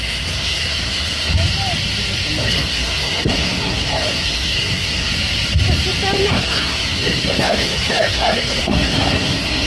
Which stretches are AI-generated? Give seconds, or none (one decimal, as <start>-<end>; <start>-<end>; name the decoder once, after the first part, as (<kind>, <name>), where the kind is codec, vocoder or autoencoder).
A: 0.0-1.3 (codec, SNAC); 2.4-5.1; 6.3-9.7